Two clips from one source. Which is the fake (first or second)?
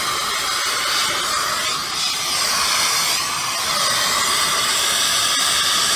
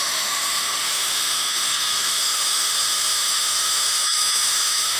second